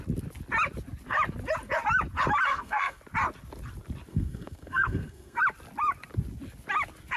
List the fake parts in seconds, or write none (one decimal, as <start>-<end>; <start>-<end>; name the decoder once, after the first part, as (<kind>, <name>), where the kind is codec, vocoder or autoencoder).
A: 2.5-3.0 (codec, SNAC); 4.1-5.4